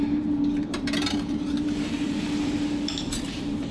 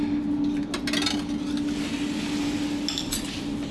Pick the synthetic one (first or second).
first